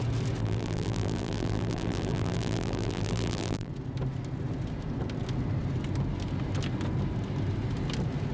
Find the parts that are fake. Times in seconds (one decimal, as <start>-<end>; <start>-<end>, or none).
0.4-3.7